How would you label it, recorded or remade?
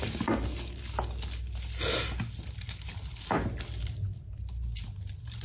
recorded